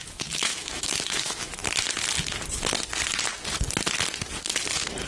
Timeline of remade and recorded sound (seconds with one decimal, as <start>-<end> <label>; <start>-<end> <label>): 0.0-1.6 remade; 1.6-5.1 recorded